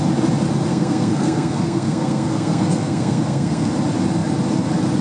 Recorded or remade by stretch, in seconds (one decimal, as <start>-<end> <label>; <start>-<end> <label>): 0.0-0.7 recorded; 0.7-3.7 remade; 3.7-5.0 recorded